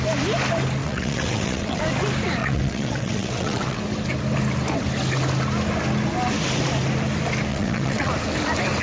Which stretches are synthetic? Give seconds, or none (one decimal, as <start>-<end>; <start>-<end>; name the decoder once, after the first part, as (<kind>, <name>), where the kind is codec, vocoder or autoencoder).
0.8-1.8 (vocoder, WaveNeXt); 2.4-3.8; 7.5-8.1